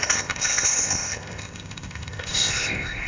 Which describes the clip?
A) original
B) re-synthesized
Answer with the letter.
B